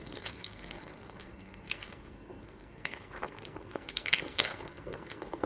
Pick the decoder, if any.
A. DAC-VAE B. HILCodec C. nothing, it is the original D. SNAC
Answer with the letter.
D